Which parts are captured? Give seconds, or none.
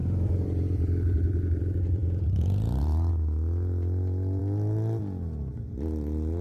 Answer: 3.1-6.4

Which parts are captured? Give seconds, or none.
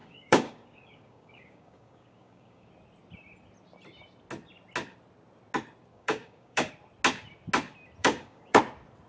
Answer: 2.7-5.9; 6.7-8.0; 8.6-9.1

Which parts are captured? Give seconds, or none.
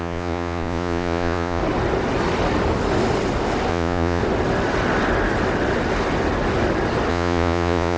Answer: 1.6-3.7; 4.2-7.1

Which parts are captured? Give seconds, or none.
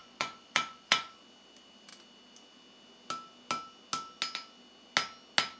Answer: 1.1-5.6